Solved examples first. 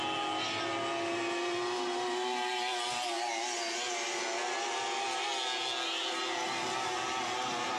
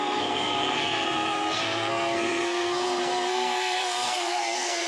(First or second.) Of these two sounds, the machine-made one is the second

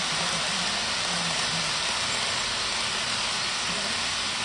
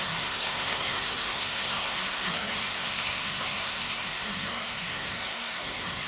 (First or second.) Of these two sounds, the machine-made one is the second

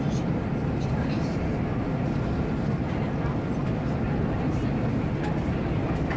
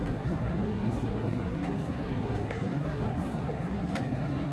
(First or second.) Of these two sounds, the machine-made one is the second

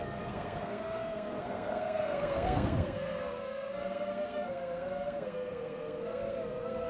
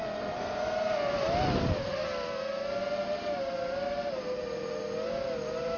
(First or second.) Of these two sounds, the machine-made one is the first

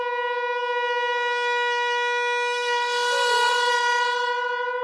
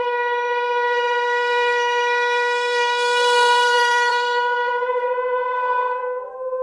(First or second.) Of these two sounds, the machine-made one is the second